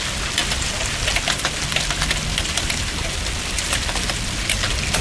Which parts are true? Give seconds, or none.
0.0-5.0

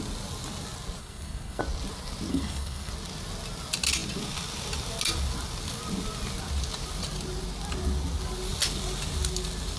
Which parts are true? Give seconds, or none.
0.0-1.0; 1.6-2.3; 2.9-9.8

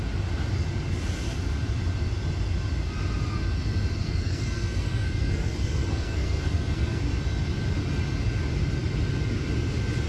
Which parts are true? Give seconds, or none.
0.0-4.0; 7.0-10.1

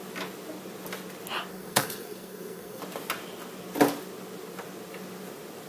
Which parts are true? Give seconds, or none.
0.0-1.5; 2.8-5.7

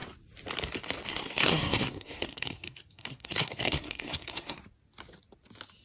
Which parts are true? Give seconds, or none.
0.0-1.1; 4.6-5.8

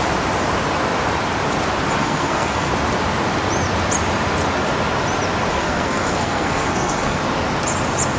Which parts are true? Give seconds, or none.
0.0-2.0; 2.7-5.5; 7.2-8.2